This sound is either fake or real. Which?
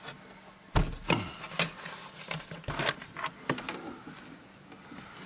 real